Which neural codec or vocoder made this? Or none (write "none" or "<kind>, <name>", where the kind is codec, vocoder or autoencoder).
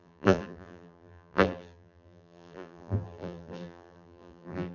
vocoder, BigVGAN v2